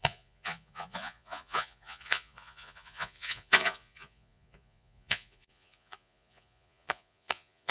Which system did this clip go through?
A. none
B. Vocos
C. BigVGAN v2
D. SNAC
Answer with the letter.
B